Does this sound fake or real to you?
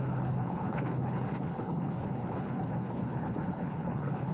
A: fake